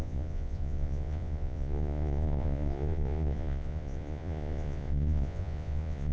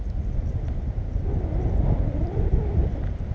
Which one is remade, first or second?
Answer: first